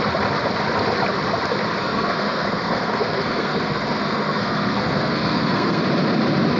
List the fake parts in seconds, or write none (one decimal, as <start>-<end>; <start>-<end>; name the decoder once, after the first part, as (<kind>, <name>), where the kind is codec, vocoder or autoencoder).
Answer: 1.8-5.8 (codec, SNAC)